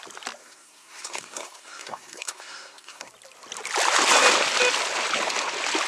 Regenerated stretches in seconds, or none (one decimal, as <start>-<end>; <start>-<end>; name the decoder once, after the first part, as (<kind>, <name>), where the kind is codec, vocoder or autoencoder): 0.4-3.1 (codec, SNAC)